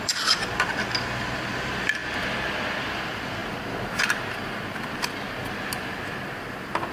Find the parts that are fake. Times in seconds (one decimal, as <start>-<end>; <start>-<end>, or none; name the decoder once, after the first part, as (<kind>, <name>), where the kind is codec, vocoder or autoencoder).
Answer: 0.0-2.0 (vocoder, BigVGAN v2); 2.8-3.4; 6.5-6.9